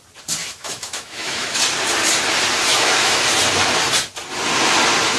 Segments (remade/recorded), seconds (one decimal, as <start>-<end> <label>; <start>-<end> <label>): 0.0-0.4 recorded; 0.4-1.6 remade; 1.6-2.7 recorded; 2.7-3.2 remade; 3.2-5.2 recorded